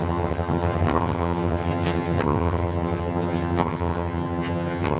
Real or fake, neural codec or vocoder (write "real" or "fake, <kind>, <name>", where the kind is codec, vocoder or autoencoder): fake, vocoder, HiFi-GAN